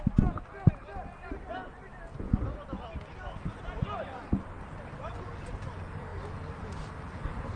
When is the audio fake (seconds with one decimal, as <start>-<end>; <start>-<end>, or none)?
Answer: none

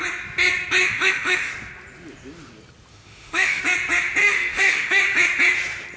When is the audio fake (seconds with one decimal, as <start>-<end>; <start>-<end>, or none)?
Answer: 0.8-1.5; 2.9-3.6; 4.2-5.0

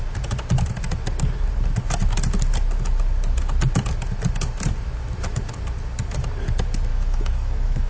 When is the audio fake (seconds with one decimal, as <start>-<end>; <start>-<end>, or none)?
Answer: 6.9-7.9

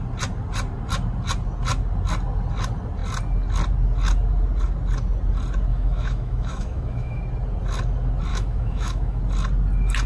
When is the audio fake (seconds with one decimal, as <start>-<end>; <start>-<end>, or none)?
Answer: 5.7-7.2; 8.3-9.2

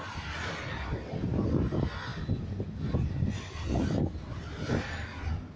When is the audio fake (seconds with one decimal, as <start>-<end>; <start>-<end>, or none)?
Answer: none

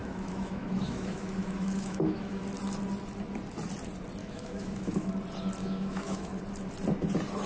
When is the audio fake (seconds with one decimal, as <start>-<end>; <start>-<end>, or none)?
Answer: 0.0-2.4; 4.2-5.1; 5.6-6.4

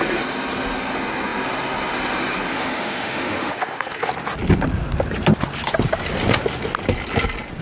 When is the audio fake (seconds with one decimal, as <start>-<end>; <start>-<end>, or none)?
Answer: 2.5-4.1